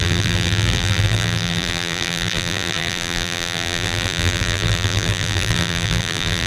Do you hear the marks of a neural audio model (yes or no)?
yes